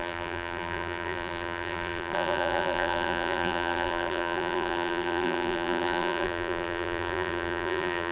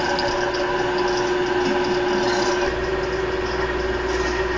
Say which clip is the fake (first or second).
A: first